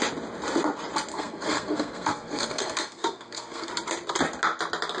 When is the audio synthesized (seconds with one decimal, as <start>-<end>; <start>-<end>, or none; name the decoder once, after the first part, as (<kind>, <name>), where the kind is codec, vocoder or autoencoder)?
1.1-3.7 (codec, SNAC)